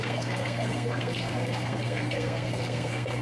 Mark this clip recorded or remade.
remade